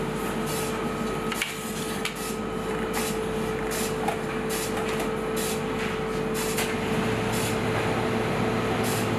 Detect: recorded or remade recorded